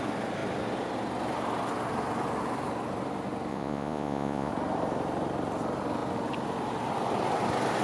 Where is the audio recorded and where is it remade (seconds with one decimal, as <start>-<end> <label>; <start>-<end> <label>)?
0.0-3.5 recorded; 3.5-4.5 remade; 4.5-7.8 recorded